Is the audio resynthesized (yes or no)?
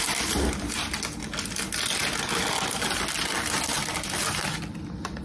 no